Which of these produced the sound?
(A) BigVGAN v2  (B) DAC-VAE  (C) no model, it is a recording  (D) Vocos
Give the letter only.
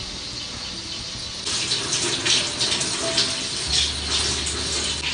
C